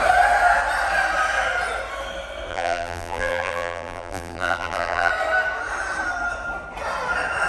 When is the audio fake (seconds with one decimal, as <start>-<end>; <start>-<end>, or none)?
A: 2.5-5.1